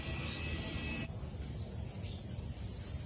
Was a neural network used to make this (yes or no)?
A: no